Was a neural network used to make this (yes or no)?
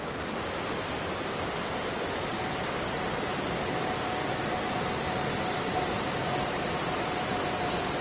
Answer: yes